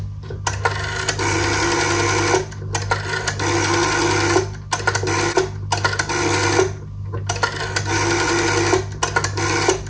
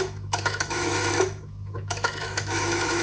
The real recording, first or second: first